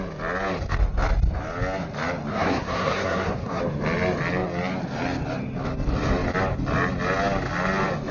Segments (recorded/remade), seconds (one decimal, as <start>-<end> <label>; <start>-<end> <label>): 0.0-2.3 recorded; 2.3-3.6 remade; 3.6-8.1 recorded